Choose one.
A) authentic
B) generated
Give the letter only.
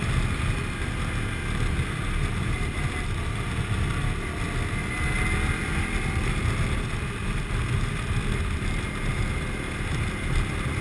A